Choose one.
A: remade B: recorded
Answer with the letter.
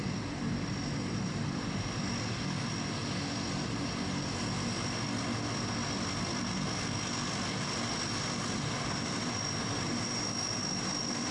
B